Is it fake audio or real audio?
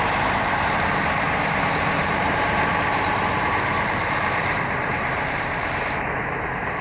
fake